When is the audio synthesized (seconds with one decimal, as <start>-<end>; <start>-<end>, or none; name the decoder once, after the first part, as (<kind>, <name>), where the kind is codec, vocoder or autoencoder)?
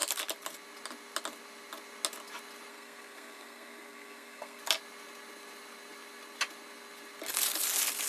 2.7-4.6 (codec, SNAC)